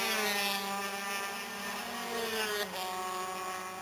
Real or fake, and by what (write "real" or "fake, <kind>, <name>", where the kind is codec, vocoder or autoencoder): real